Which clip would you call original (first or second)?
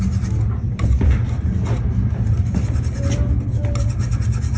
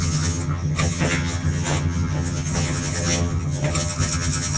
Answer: first